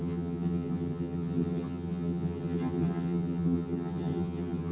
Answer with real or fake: fake